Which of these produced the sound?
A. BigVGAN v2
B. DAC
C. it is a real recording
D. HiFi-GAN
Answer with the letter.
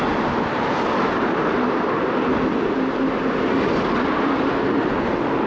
C